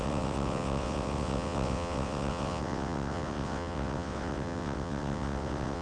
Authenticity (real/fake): fake